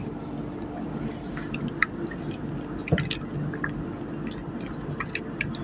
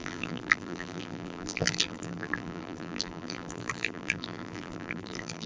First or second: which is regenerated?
second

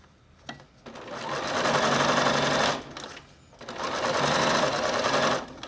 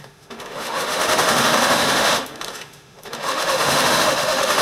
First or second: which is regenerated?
second